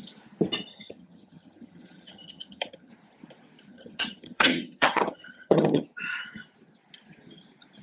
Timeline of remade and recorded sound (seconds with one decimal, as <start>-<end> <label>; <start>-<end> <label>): 0.0-0.7 recorded; 0.7-2.9 remade; 2.9-3.7 recorded; 3.7-5.8 remade; 5.8-7.8 recorded